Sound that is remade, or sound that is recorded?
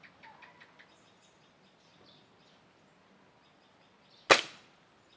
recorded